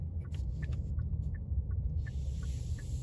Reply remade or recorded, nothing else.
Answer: recorded